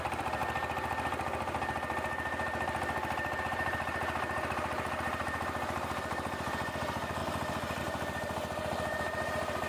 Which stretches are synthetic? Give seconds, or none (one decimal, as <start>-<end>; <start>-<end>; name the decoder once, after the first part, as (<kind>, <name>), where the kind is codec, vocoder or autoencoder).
0.0-0.4 (vocoder, BigVGAN v2); 3.4-7.2; 7.8-9.7